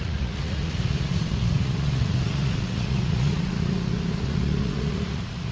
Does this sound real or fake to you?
fake